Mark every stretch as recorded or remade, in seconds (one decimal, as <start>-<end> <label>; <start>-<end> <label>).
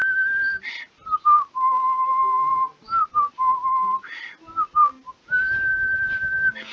0.0-0.7 remade; 0.7-2.5 recorded; 2.5-3.3 remade; 3.3-6.7 recorded